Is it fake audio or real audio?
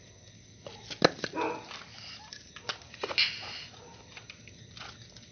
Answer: real